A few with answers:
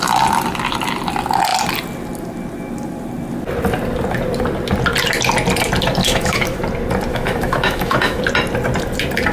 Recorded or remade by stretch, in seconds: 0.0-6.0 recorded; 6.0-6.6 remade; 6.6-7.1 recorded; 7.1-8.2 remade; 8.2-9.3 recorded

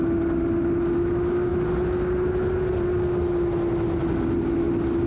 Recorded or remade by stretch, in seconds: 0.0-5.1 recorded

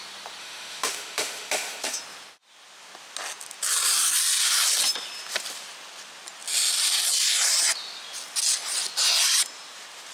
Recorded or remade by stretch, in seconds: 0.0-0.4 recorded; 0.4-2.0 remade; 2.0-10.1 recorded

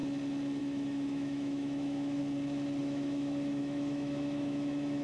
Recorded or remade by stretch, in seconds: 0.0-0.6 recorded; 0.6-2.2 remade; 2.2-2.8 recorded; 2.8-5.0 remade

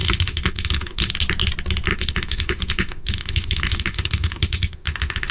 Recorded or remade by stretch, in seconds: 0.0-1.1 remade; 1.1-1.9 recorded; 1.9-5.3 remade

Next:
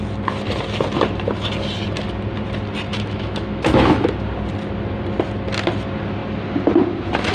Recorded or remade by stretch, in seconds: 0.0-2.9 recorded; 2.9-4.1 remade; 4.1-7.3 recorded